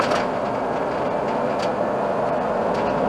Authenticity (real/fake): real